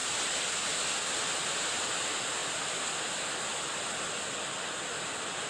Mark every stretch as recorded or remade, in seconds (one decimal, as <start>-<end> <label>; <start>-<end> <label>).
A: 0.0-0.8 remade; 0.8-5.5 recorded